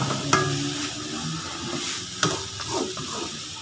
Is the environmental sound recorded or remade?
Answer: recorded